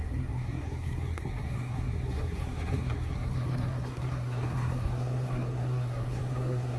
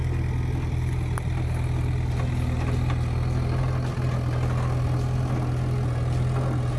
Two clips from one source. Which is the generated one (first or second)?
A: first